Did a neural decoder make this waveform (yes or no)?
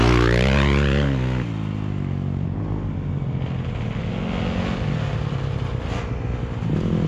no